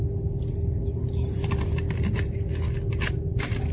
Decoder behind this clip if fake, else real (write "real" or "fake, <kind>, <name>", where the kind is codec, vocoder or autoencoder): real